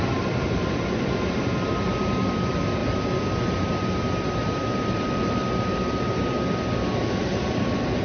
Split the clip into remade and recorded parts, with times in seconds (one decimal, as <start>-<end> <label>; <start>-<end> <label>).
0.0-8.0 recorded